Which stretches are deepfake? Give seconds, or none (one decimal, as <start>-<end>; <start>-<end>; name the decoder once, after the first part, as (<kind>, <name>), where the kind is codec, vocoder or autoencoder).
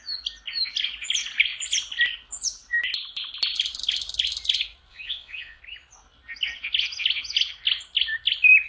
4.9-5.6 (vocoder, Vocos)